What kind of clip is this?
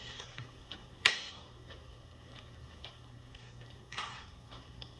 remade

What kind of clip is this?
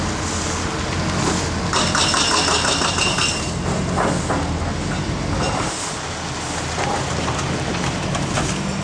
recorded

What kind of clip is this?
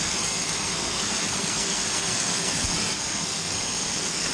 remade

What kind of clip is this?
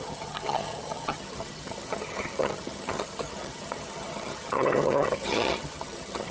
remade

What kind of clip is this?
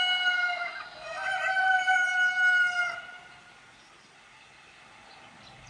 recorded